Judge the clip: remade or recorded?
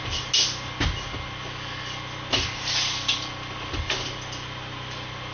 recorded